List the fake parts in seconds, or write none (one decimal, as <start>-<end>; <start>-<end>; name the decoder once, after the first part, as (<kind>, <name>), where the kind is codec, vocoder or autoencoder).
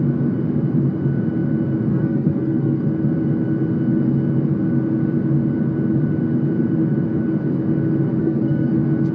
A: 1.9-2.8 (codec, SNAC); 8.2-8.7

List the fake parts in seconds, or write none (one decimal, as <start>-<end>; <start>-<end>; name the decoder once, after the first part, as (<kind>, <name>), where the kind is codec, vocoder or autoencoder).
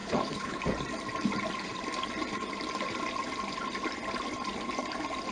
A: 0.0-0.6 (codec, HILCodec)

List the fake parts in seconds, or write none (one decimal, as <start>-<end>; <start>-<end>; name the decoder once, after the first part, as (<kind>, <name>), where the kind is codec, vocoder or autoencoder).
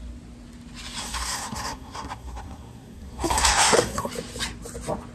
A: 1.0-4.1 (codec, SNAC)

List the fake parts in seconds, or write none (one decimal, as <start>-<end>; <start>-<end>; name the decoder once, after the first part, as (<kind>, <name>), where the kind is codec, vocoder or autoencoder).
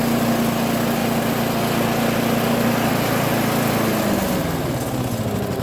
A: none